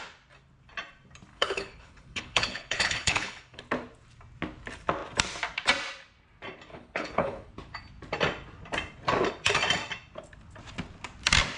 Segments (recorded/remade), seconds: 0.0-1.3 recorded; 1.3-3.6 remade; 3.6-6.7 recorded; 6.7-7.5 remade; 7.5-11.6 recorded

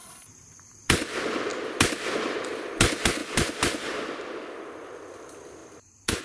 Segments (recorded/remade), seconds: 0.0-0.8 remade; 0.8-5.6 recorded; 5.6-6.2 remade

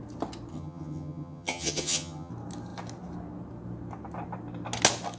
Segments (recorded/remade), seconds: 0.0-0.5 recorded; 0.5-2.3 remade; 2.3-5.2 recorded

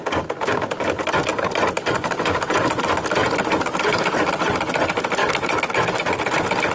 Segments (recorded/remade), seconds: 0.0-1.3 recorded; 1.3-2.8 remade; 2.8-3.2 recorded; 3.2-4.3 remade; 4.3-5.2 recorded; 5.2-5.7 remade; 5.7-6.7 recorded

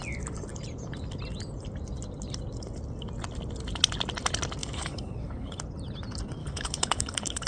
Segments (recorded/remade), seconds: 0.0-4.6 recorded; 4.6-5.6 remade; 5.6-6.4 recorded; 6.4-7.5 remade